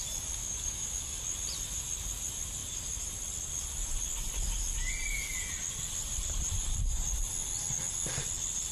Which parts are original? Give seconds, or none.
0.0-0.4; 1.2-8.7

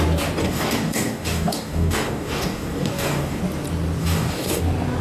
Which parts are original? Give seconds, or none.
0.0-0.4; 3.4-4.0; 4.6-5.0

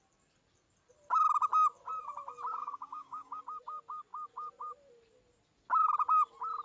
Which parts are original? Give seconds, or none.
0.0-2.6; 3.4-6.6

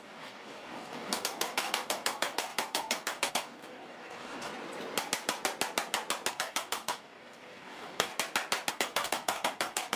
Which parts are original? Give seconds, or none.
4.5-6.3; 8.1-8.7

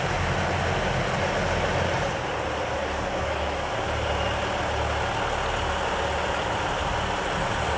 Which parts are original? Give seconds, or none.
0.0-2.8; 3.7-7.8

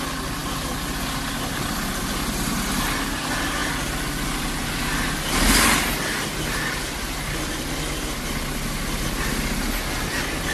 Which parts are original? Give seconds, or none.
0.0-10.5